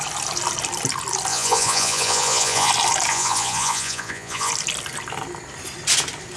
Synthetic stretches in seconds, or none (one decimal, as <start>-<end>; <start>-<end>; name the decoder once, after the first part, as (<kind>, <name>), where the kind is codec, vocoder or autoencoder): 1.3-2.7 (vocoder, Vocos); 3.1-4.5